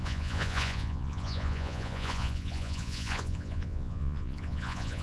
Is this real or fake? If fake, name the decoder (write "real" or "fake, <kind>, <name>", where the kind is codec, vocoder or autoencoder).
fake, vocoder, Vocos